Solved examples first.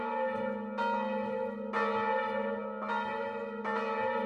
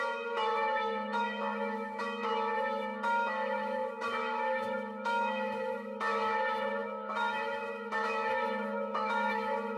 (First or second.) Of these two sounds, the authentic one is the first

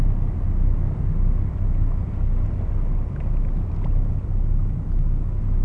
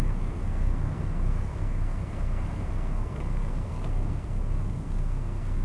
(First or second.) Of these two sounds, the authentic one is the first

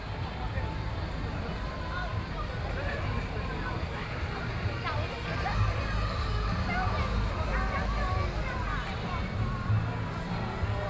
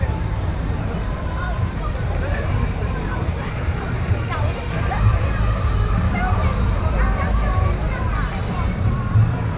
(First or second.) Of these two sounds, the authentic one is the first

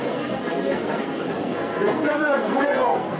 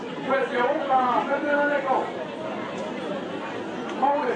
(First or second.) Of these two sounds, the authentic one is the second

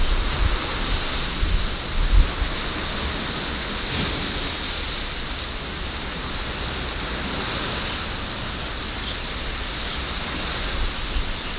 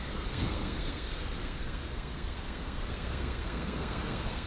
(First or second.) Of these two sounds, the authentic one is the first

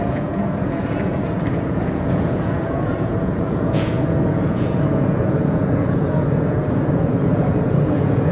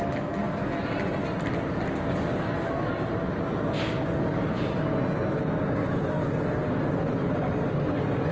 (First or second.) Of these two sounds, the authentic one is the second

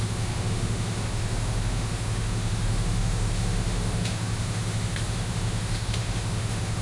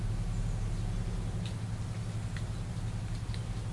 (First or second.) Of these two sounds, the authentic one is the second